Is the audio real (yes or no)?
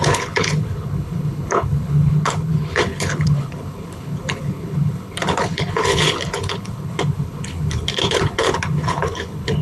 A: no